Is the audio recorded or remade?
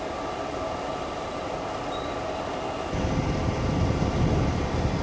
recorded